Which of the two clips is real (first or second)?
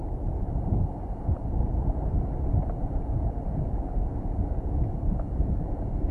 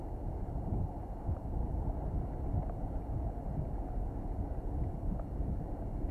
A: second